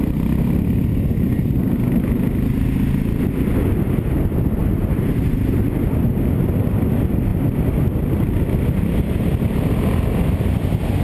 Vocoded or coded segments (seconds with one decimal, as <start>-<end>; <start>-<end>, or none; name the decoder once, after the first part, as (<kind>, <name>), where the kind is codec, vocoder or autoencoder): none

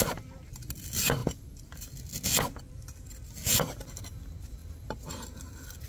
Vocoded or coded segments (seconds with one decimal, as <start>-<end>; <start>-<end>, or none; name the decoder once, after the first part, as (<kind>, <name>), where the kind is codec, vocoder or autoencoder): none